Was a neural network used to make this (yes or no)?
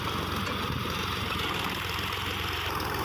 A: yes